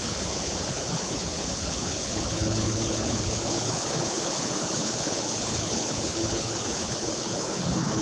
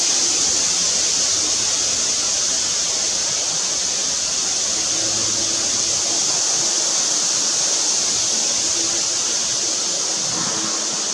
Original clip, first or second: second